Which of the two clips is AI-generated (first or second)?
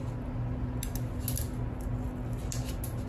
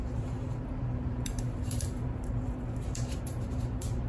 second